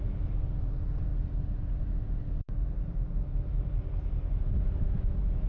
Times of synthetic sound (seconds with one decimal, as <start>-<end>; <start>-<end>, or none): none